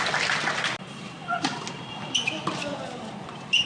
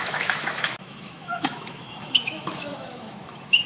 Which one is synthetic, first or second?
second